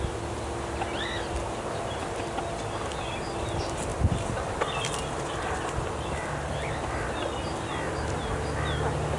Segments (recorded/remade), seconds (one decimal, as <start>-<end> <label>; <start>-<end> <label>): 0.0-9.2 recorded